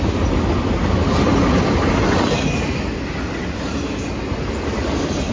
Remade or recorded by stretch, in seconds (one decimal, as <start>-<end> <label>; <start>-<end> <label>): 0.0-5.3 recorded

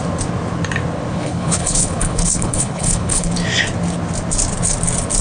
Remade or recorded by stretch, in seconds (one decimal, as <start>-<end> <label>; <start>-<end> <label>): 0.0-1.1 recorded; 1.1-3.3 remade; 3.3-5.2 recorded